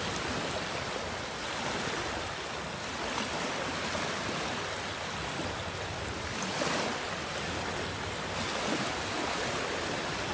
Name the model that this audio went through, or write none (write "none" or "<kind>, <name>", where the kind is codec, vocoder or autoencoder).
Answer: none